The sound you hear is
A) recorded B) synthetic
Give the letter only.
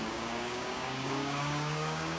B